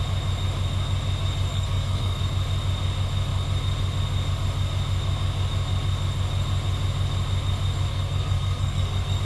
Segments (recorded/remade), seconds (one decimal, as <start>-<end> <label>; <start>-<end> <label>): 0.0-1.5 recorded; 1.5-2.2 remade; 2.2-7.9 recorded; 7.9-9.2 remade